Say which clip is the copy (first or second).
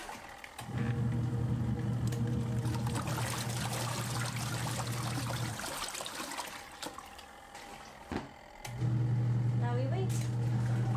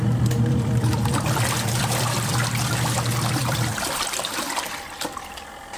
second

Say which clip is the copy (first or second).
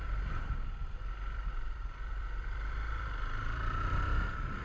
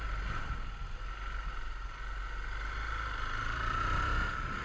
first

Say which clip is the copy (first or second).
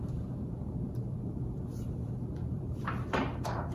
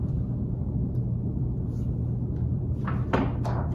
first